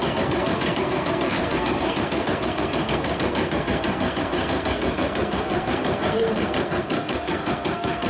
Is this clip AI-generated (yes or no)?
yes